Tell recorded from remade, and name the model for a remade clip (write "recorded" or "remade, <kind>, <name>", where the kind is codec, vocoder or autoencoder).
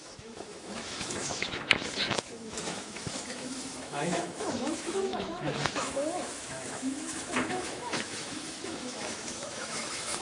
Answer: remade, autoencoder, DAC-VAE